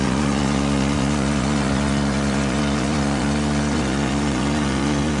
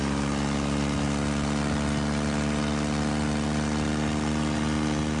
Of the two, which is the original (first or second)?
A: second